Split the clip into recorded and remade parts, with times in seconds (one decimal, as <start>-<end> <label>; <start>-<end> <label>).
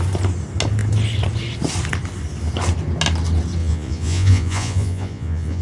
0.0-3.6 recorded; 3.6-5.6 remade